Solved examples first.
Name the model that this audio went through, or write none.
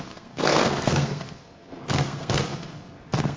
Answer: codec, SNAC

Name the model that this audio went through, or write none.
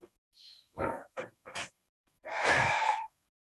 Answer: codec, SNAC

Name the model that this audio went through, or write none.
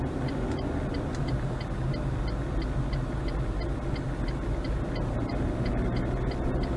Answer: none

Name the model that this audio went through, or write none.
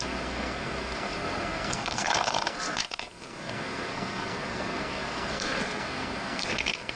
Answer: codec, SNAC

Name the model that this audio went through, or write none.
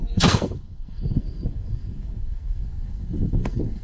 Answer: codec, SNAC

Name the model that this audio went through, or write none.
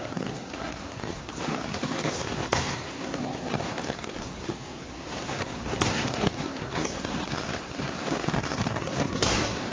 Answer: codec, SNAC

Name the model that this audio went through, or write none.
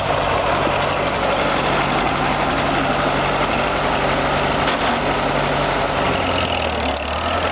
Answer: none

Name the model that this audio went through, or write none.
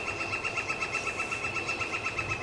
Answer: none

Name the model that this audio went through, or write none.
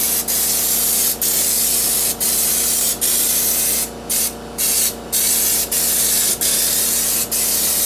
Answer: none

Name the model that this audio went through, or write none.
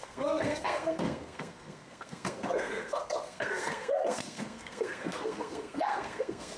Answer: codec, SNAC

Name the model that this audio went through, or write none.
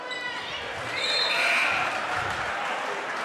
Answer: none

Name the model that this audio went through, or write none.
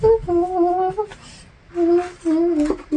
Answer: none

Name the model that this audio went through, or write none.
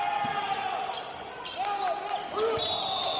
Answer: none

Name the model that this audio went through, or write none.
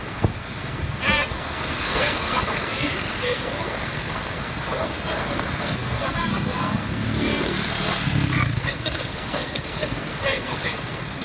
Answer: codec, SNAC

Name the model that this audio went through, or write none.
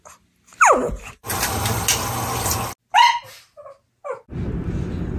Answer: none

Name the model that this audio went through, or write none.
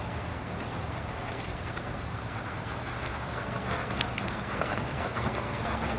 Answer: codec, SNAC